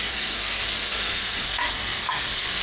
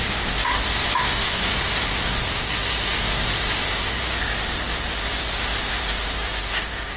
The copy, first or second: first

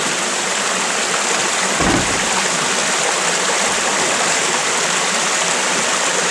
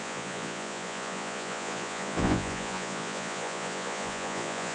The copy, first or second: second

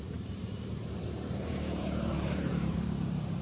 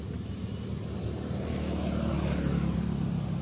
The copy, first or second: first